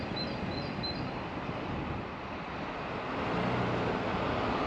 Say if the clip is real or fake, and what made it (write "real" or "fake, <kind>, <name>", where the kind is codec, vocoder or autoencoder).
real